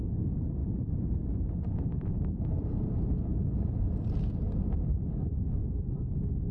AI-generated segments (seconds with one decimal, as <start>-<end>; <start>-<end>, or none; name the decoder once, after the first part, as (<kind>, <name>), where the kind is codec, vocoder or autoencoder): 0.6-2.8 (vocoder, BigVGAN v2); 3.3-5.1; 5.6-6.1